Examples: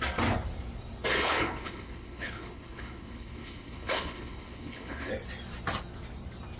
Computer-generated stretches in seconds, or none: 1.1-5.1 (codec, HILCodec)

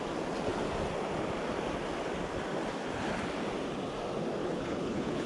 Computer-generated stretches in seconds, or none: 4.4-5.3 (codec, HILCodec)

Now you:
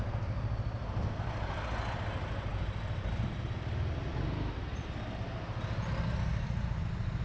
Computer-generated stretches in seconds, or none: none

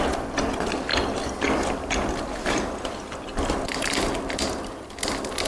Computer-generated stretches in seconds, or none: none

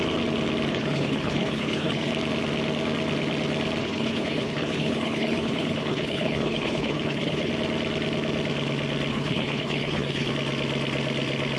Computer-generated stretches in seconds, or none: 0.7-2.1 (codec, HILCodec); 3.8-7.5; 9.1-10.3

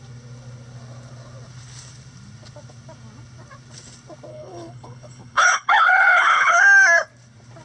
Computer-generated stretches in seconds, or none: 4.3-6.6 (codec, HILCodec)